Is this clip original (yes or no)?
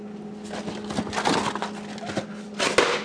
yes